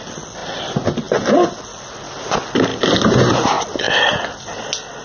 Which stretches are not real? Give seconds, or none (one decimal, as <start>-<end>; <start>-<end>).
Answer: none